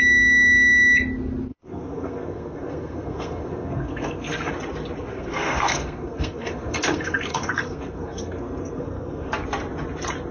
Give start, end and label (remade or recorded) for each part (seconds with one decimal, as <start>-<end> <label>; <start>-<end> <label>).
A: 0.0-1.5 recorded; 1.5-4.5 remade; 4.5-5.1 recorded; 5.1-9.3 remade; 9.3-10.3 recorded